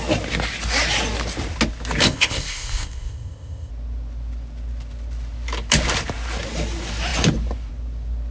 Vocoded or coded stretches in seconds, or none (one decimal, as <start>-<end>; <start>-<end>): 2.0-3.7

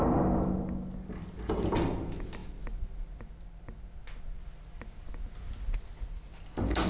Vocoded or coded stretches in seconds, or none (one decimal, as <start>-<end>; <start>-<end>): none